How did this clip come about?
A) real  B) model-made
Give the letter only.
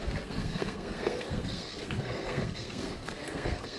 B